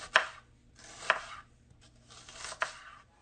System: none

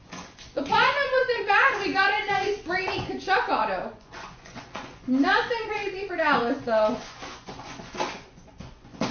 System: vocoder, Vocos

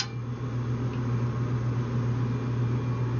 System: none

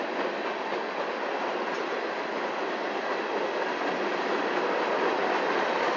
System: none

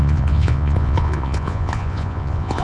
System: vocoder, Vocos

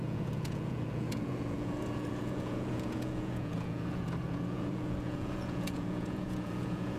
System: vocoder, Vocos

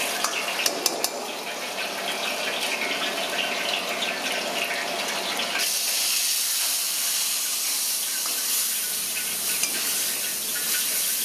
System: none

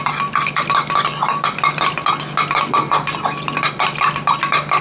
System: none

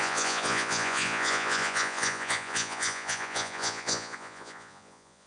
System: vocoder, Vocos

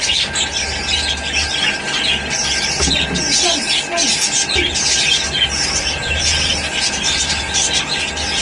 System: none